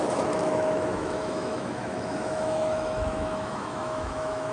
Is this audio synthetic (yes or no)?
yes